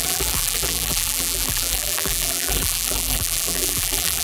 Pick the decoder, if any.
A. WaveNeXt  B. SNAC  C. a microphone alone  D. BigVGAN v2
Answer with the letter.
D